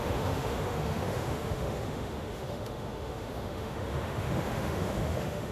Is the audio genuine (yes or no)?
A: no